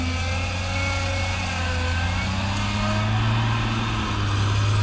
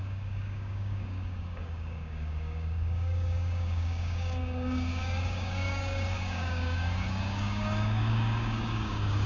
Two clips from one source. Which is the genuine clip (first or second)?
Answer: first